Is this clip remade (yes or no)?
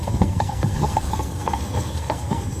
yes